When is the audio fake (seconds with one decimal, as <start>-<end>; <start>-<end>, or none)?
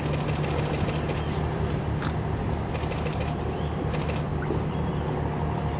none